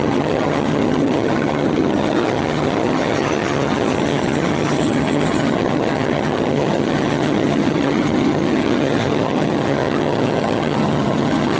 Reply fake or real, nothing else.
fake